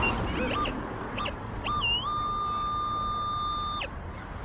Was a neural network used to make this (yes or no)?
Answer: no